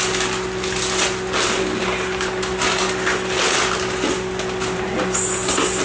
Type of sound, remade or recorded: recorded